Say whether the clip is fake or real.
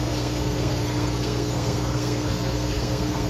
fake